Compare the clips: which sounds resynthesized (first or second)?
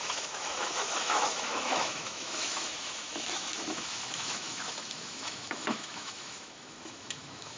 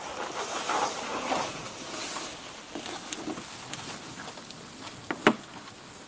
first